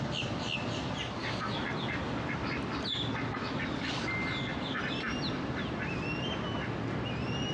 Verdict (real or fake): real